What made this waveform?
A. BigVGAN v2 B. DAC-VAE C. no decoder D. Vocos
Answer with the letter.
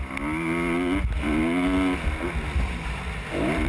C